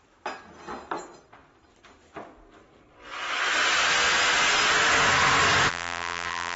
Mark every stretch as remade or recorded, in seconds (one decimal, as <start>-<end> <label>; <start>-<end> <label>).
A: 0.0-5.7 recorded; 5.7-6.6 remade

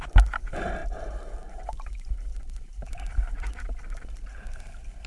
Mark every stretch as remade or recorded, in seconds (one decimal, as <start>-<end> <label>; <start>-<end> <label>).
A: 0.0-0.8 recorded; 0.8-3.1 remade; 3.1-5.1 recorded

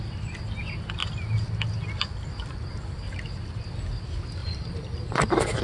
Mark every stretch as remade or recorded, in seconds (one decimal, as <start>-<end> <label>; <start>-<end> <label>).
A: 0.0-4.4 recorded; 4.4-5.6 remade